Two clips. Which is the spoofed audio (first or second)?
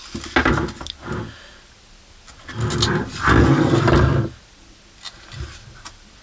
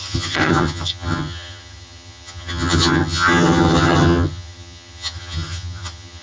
second